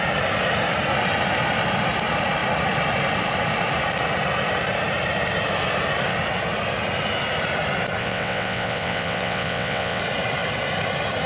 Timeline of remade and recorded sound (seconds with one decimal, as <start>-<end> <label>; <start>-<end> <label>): 0.0-8.0 recorded; 8.0-10.0 remade; 10.0-11.3 recorded